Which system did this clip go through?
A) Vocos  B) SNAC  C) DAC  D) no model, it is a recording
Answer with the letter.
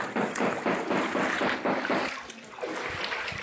D